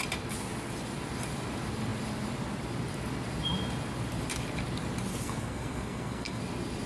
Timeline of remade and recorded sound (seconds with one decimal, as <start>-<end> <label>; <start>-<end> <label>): 0.0-5.1 recorded; 5.1-6.4 remade; 6.4-6.9 recorded